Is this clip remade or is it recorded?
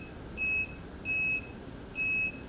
recorded